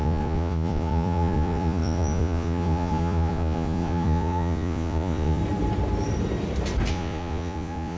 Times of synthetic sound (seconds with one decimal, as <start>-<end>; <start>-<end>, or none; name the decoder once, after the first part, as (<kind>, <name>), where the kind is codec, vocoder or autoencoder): 0.0-5.4 (vocoder, Vocos); 6.9-8.0